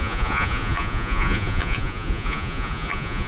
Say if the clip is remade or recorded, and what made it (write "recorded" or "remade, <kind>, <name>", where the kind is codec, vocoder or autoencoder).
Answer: remade, vocoder, Vocos